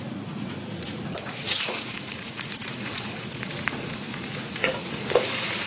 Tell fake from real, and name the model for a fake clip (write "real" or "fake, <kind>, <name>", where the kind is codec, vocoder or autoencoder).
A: fake, vocoder, Vocos